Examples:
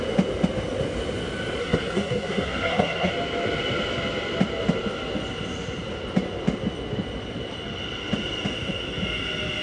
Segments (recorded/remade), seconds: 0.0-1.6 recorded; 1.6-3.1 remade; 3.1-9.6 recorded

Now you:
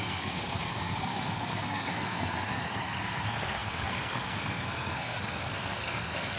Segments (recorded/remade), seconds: 0.0-6.4 remade

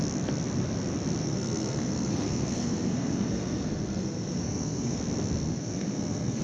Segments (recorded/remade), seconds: 0.0-1.2 recorded; 1.2-5.0 remade; 5.0-5.5 recorded; 5.5-6.4 remade